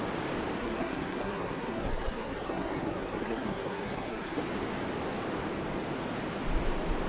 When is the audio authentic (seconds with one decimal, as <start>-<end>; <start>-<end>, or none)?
0.0-0.6; 4.4-7.1